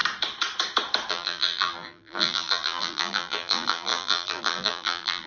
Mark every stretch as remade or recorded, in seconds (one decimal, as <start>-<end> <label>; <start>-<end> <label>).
0.0-1.1 recorded; 1.1-5.3 remade